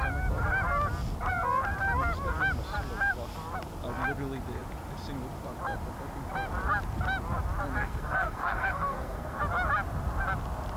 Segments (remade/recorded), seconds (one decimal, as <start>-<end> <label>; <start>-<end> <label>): 0.0-7.8 recorded; 7.8-9.4 remade; 9.4-10.8 recorded